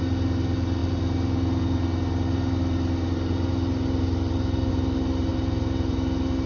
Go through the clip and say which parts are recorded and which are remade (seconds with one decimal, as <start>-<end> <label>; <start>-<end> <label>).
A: 0.0-6.5 recorded

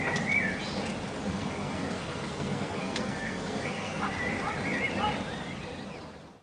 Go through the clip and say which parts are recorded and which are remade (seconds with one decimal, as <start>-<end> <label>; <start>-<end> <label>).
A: 0.0-1.3 recorded; 1.3-4.0 remade; 4.0-6.4 recorded

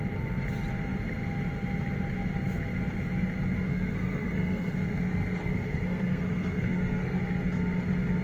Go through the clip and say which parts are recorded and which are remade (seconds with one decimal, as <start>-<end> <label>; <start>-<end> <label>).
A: 0.0-3.7 recorded; 3.7-7.2 remade; 7.2-8.2 recorded

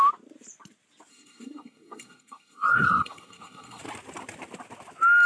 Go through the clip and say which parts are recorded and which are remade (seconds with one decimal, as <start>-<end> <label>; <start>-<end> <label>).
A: 0.0-1.1 recorded; 1.1-3.8 remade; 3.8-5.3 recorded

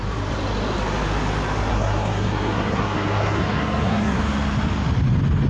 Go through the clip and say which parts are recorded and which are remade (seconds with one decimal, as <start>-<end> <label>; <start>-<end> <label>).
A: 0.0-1.7 recorded; 1.7-4.2 remade; 4.2-5.5 recorded

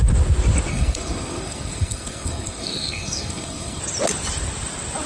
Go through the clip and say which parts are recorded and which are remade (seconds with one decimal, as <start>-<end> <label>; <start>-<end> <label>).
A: 0.0-0.7 recorded; 0.7-3.8 remade; 3.8-5.1 recorded

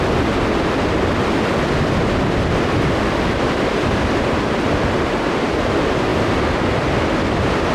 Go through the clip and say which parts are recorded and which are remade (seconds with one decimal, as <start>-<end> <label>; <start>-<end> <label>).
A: 0.0-7.7 recorded